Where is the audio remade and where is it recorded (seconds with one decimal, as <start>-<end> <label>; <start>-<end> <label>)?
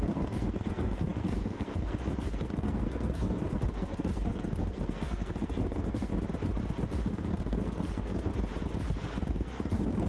0.0-6.1 remade; 6.1-7.0 recorded; 7.0-8.3 remade; 8.3-9.3 recorded; 9.3-10.1 remade